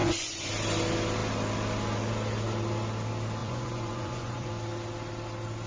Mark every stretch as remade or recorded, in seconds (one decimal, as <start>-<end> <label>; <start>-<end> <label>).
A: 0.0-0.5 remade; 0.5-3.4 recorded; 3.4-4.5 remade; 4.5-5.7 recorded